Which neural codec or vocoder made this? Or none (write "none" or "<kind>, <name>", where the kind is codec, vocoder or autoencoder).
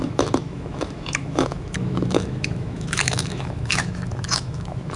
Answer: autoencoder, DAC-VAE